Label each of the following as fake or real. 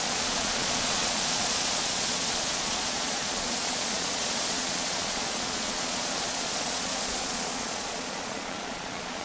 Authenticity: fake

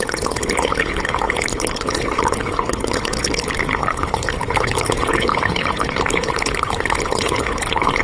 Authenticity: fake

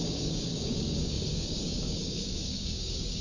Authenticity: fake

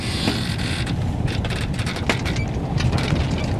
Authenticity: real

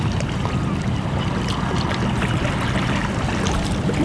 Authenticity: real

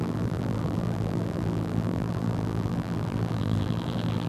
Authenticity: fake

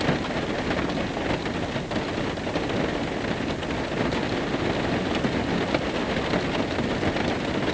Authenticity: real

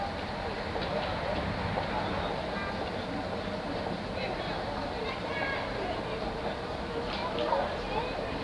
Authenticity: real